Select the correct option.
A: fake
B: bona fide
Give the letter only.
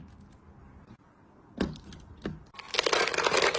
B